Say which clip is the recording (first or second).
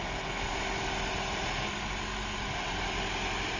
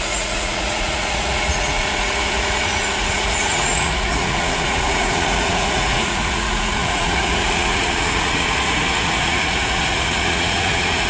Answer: first